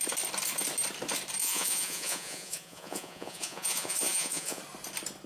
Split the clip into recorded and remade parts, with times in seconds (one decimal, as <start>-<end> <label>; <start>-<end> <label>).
0.0-1.4 recorded; 1.4-4.6 remade; 4.6-5.3 recorded